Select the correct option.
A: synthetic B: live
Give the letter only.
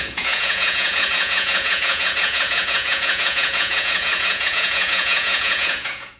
A